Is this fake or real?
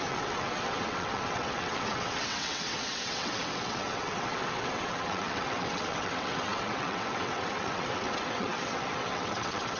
fake